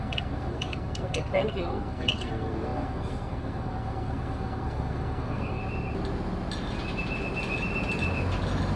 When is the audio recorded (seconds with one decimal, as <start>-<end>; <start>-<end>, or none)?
5.6-8.8